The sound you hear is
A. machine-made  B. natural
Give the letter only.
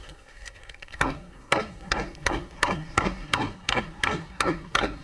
A